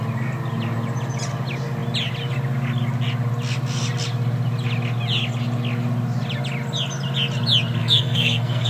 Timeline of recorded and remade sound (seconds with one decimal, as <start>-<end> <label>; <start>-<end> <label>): 0.0-7.8 recorded; 7.8-8.7 remade

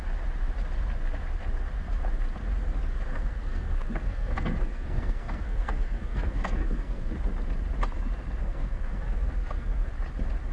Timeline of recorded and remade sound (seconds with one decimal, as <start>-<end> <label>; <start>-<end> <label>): 0.0-3.1 recorded; 3.1-7.1 remade; 7.1-8.4 recorded; 8.4-9.9 remade; 9.9-10.5 recorded

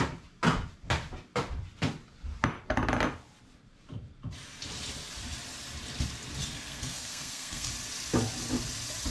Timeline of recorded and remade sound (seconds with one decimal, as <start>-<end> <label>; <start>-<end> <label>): 0.0-6.4 recorded; 6.4-7.7 remade; 7.7-9.1 recorded